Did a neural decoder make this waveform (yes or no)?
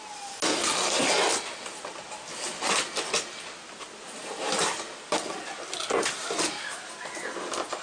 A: no